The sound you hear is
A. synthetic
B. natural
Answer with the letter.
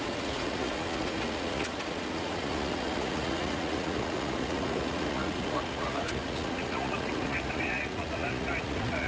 A